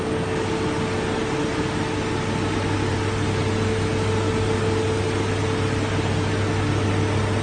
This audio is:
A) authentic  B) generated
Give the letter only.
A